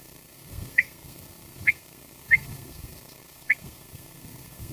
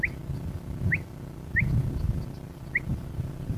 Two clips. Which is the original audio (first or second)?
second